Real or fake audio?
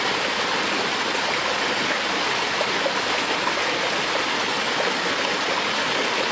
real